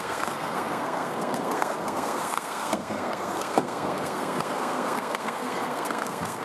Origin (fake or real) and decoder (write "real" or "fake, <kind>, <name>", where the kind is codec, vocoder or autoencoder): fake, codec, SNAC